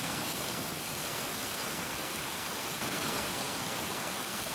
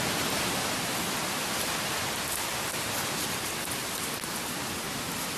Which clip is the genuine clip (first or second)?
second